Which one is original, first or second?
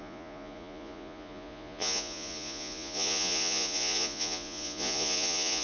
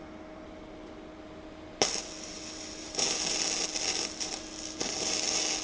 second